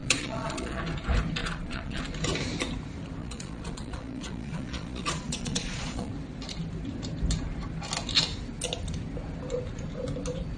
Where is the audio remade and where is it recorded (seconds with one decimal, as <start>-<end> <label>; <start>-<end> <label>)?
0.0-0.8 remade; 0.8-1.4 recorded; 1.4-2.0 remade; 2.0-3.2 recorded; 3.2-6.1 remade; 6.1-10.6 recorded